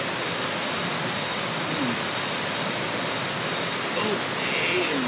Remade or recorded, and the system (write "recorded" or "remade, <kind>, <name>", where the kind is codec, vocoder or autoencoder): recorded